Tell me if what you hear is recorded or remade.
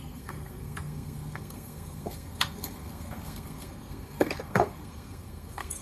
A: remade